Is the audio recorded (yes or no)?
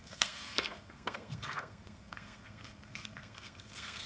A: no